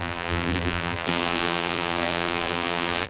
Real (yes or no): no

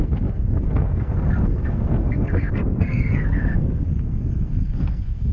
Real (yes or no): no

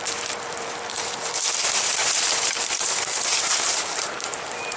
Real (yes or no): no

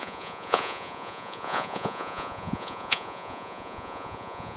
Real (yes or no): no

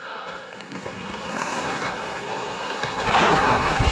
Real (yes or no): no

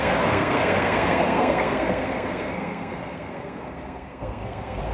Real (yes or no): no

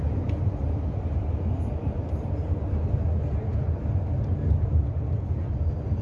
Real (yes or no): yes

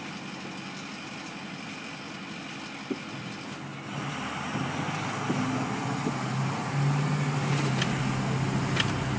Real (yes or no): yes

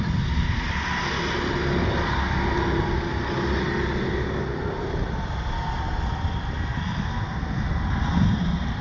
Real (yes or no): yes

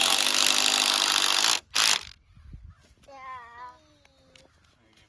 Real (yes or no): yes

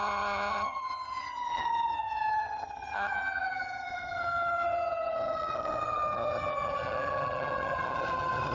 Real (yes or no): no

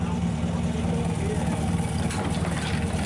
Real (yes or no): yes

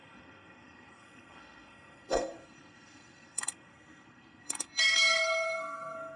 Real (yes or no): no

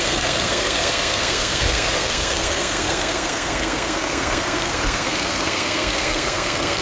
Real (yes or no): no